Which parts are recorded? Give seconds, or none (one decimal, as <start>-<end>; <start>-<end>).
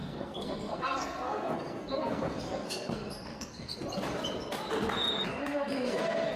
3.8-5.3